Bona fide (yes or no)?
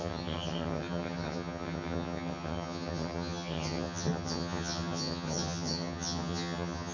no